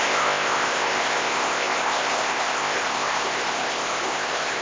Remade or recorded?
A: remade